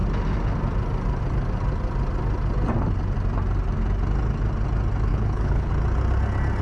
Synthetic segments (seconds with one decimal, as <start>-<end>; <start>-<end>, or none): 5.1-5.7

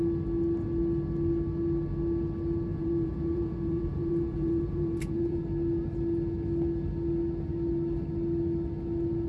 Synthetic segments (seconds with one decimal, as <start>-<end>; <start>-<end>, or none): 2.7-5.4

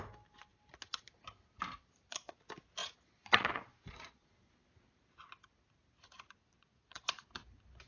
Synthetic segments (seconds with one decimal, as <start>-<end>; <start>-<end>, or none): 1.8-2.4; 2.8-4.3; 6.4-7.3

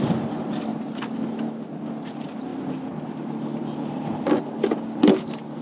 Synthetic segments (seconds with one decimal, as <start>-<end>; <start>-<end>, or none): none

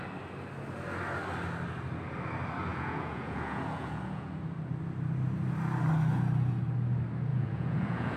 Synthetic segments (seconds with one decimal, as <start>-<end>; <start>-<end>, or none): 2.7-4.3; 7.3-8.2

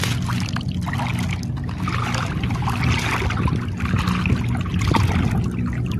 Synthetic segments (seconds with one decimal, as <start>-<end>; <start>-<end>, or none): none

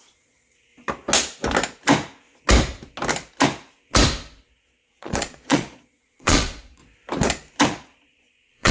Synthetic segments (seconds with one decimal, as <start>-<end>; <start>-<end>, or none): 0.0-0.7; 4.5-6.8; 7.6-8.7

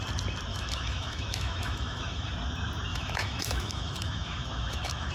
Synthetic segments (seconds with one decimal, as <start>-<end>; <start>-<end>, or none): 0.5-2.3; 2.9-5.1